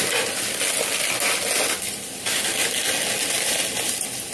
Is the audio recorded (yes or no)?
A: yes